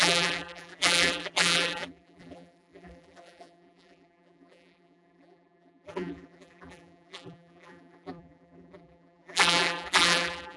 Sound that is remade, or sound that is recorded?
remade